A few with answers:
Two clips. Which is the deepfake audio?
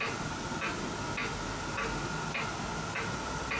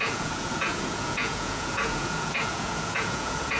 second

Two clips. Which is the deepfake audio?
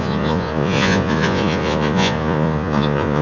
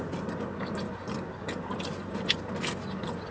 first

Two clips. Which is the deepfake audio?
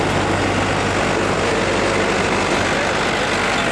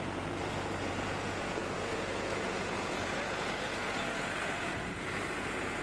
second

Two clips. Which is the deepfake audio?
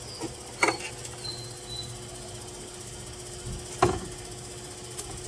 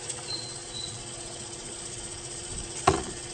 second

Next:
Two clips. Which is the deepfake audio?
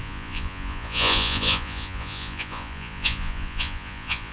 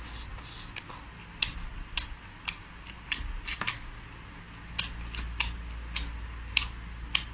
first